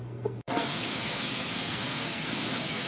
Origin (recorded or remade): remade